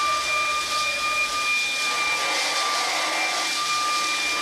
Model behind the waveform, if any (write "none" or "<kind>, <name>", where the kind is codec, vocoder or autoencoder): none